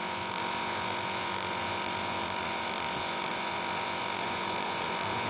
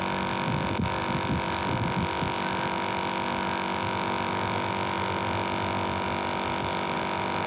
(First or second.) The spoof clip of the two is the first